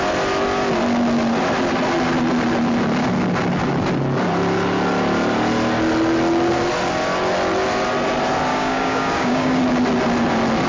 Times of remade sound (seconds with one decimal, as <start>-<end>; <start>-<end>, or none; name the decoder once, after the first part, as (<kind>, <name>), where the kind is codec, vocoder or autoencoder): 8.5-9.6 (codec, DAC)